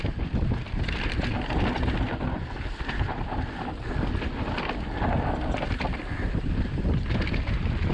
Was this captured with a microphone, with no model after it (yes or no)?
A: yes